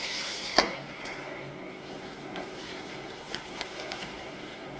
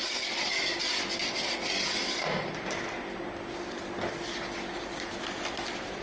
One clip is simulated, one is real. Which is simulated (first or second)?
first